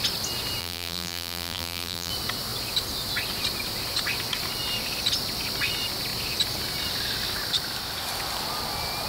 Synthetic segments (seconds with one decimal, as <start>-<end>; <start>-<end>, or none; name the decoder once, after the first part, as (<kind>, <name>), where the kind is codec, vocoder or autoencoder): 0.6-2.1 (vocoder, BigVGAN v2)